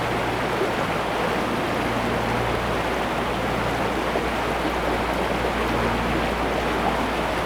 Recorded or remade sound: recorded